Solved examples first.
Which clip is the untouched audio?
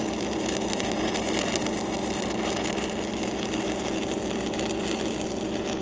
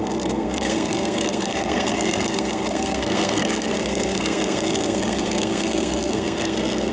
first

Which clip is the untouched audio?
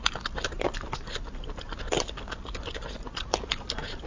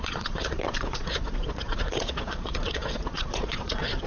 first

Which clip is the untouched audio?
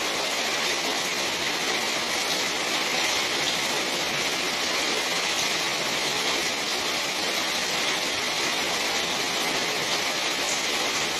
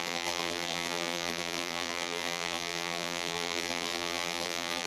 first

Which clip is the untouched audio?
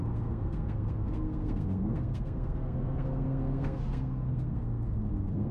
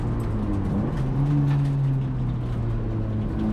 second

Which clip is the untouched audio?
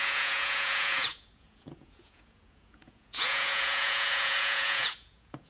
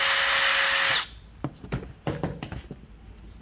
second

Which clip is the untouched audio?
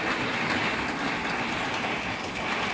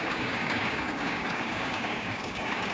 first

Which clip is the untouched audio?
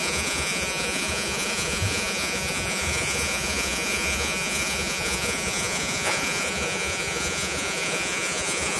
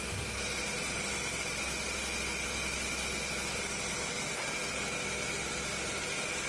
second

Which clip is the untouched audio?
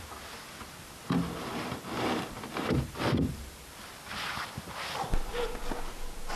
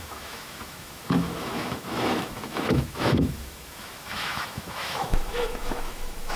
first